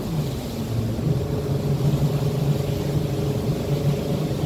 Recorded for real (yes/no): yes